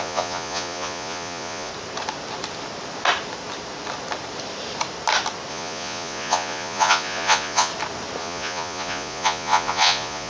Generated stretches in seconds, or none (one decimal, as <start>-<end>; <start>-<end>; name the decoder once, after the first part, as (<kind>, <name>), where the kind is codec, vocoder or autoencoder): 0.0-1.7 (vocoder, Vocos); 5.5-7.7; 8.2-10.3